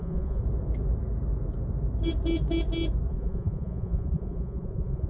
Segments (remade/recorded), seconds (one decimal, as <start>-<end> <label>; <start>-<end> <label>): 0.0-0.4 remade; 0.4-3.1 recorded; 3.1-5.1 remade